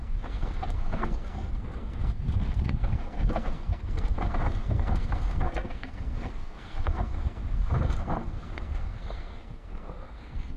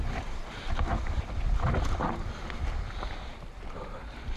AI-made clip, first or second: first